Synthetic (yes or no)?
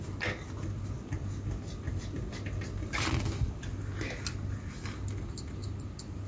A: no